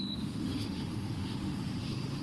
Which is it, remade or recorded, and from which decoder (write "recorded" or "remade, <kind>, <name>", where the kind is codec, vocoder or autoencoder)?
remade, autoencoder, DAC-VAE